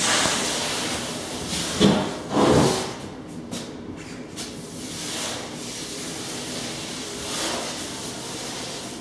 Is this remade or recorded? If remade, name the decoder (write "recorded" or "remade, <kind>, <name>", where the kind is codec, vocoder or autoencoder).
recorded